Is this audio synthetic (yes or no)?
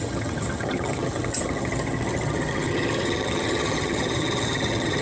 yes